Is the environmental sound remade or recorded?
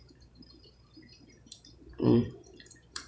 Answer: remade